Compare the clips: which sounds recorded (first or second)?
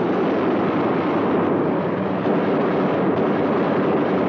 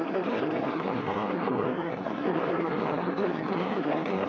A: first